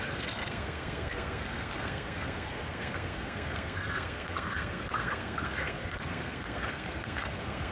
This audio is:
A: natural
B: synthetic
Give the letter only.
B